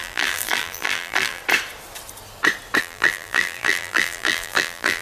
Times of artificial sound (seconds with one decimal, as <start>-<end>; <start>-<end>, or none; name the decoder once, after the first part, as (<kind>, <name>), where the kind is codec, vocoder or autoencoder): 0.0-1.4 (vocoder, BigVGAN v2); 2.8-5.0